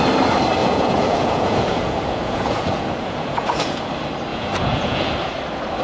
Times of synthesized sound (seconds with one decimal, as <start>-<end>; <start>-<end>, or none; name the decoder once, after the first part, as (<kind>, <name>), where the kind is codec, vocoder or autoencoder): 0.6-3.9 (vocoder, Vocos); 4.3-5.1